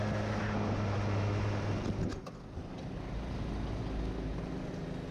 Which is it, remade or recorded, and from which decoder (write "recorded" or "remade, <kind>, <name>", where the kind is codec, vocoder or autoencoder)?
recorded